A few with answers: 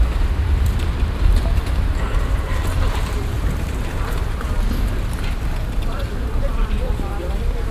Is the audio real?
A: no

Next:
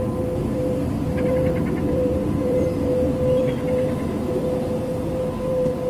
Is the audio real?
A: no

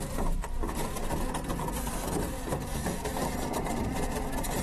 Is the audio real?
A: no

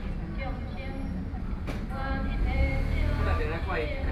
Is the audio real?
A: yes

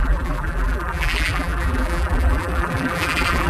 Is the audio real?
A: no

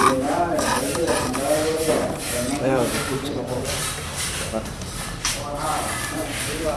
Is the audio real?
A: no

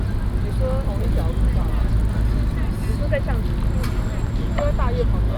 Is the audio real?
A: yes